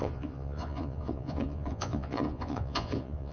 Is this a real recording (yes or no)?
no